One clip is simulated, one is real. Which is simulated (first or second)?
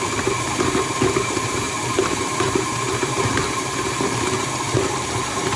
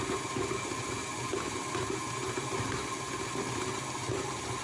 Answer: first